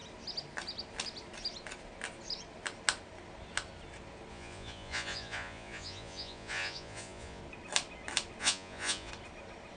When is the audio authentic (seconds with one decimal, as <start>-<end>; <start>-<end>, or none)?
0.0-4.3; 7.4-8.4; 9.1-9.8